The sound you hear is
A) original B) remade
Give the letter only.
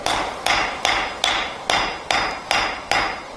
A